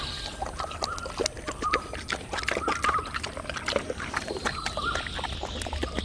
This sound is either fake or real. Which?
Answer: real